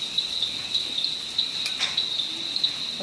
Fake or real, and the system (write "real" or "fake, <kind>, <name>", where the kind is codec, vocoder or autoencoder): real